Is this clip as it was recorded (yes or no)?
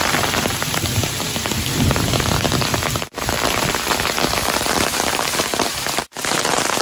no